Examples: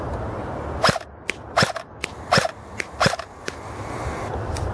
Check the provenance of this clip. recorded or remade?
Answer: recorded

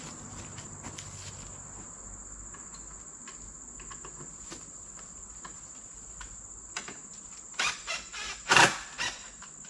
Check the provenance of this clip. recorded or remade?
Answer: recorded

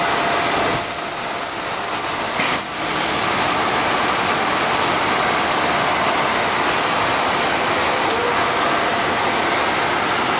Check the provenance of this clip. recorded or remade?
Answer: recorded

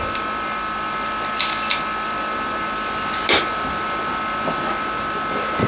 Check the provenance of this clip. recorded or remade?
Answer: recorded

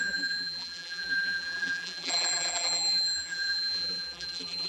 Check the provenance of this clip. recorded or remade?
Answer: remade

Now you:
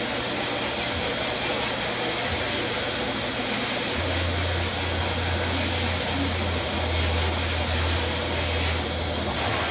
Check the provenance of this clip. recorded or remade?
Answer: recorded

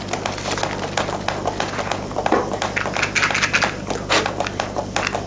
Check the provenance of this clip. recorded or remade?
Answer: recorded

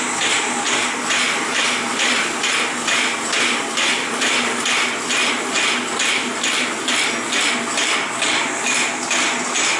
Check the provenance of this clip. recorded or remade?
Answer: recorded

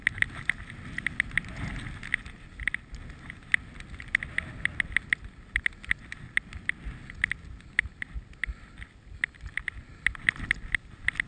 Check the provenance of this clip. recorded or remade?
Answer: recorded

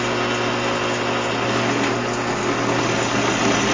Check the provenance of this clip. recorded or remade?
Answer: recorded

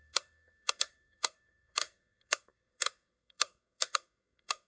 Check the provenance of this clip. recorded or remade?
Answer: remade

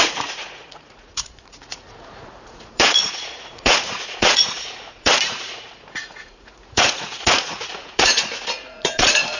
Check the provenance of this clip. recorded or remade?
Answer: remade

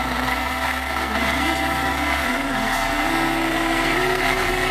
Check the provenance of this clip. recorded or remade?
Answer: remade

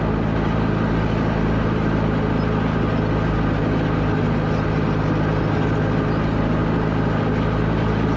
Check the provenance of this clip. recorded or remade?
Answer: recorded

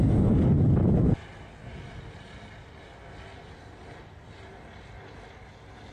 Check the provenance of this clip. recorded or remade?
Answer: recorded